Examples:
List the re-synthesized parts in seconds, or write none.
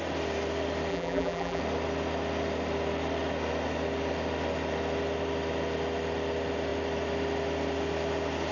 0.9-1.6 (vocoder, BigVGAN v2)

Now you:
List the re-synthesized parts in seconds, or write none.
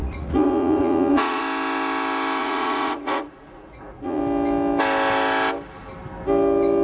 0.0-1.4 (vocoder, Vocos); 2.4-4.2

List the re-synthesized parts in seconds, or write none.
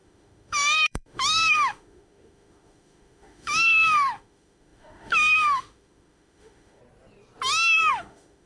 0.0-6.8 (autoencoder, DAC-VAE); 7.9-8.5